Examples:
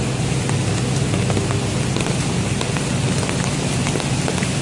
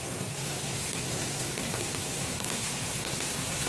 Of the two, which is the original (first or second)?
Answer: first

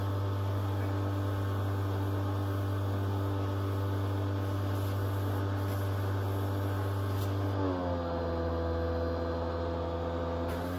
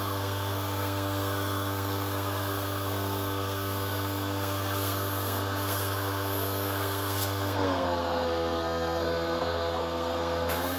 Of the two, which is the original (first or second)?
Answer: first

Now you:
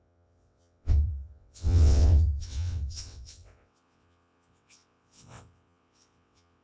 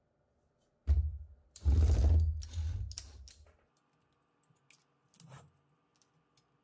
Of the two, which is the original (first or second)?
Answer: second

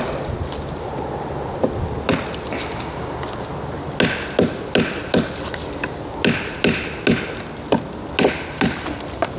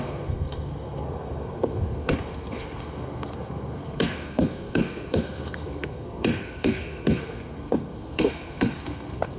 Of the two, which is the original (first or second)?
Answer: first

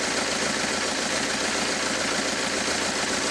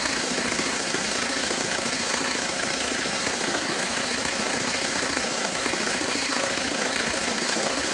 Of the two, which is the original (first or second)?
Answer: first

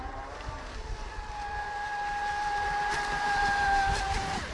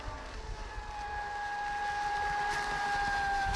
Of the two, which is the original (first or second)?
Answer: second